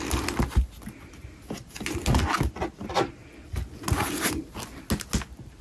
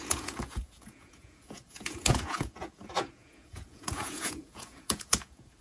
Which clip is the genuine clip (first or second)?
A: first